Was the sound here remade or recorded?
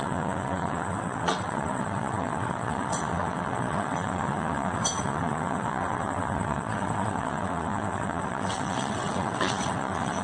remade